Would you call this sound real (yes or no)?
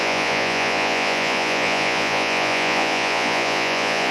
no